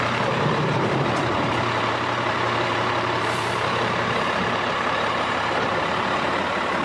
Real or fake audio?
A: fake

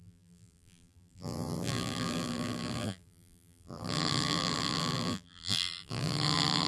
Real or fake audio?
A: fake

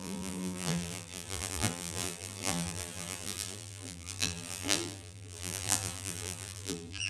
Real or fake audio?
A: fake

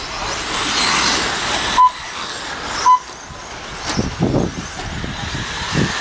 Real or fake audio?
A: real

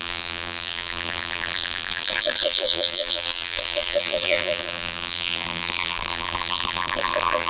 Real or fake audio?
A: fake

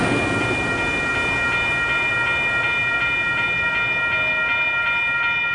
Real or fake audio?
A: real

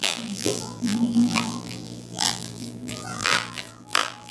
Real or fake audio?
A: fake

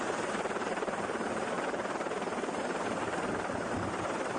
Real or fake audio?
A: fake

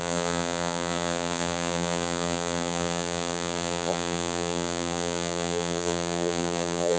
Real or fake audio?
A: fake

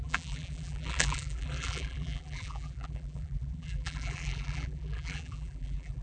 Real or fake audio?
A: fake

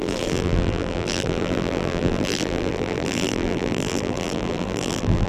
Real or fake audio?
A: fake